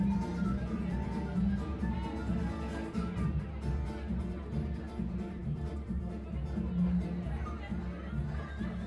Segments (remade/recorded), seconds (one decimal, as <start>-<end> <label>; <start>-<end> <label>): 0.0-5.4 recorded; 5.4-6.0 remade; 6.0-8.9 recorded